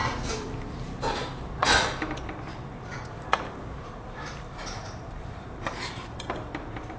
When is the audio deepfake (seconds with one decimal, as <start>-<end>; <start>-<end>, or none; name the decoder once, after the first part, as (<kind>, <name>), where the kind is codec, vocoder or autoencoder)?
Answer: 0.0-1.5 (vocoder, BigVGAN v2); 2.5-6.5